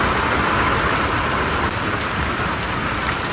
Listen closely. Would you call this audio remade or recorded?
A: recorded